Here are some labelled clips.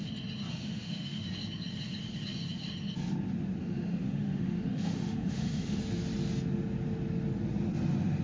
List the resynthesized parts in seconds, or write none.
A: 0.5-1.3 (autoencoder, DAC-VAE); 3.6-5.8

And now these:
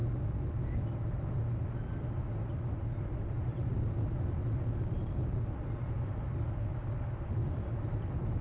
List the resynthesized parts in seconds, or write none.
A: none

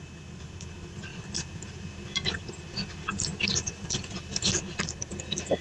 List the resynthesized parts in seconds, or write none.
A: 1.1-2.5 (vocoder, BigVGAN v2); 3.3-5.6

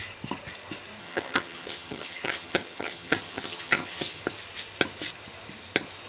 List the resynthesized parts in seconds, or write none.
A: 1.0-4.2 (vocoder, HiFi-GAN)

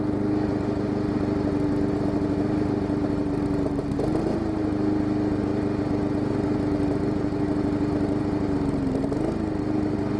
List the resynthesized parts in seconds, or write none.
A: none

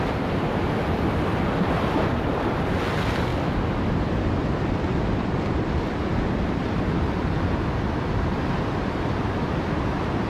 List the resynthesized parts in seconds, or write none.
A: none

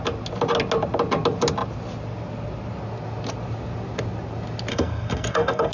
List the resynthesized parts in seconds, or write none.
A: 4.7-5.7 (codec, SNAC)

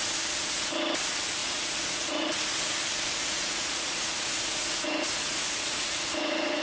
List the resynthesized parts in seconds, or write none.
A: 1.4-2.7 (vocoder, Vocos); 3.2-6.6